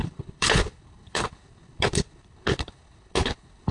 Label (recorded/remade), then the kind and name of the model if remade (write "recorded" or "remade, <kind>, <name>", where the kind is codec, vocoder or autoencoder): remade, codec, HILCodec